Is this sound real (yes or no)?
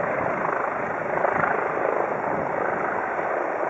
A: yes